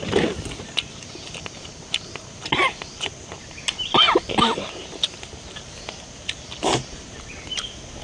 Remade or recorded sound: recorded